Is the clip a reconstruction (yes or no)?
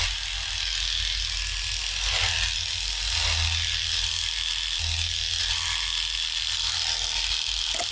no